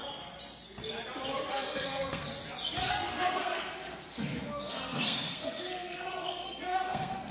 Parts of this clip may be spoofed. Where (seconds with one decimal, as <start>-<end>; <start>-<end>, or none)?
1.5-2.3; 2.9-7.3

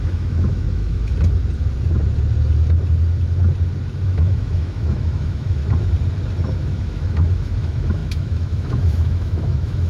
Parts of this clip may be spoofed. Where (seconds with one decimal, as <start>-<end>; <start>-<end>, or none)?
0.0-1.1; 4.0-5.6; 6.6-9.9

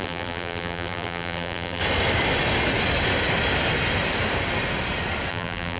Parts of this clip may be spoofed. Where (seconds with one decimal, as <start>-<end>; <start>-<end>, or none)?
0.0-1.8; 5.3-5.8

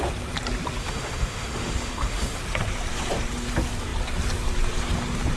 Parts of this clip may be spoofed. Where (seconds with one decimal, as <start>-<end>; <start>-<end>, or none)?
0.8-2.4